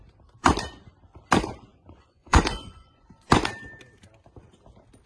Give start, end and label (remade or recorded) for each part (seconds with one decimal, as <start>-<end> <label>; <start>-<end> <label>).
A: 0.0-1.7 recorded; 1.7-3.1 remade; 3.1-5.1 recorded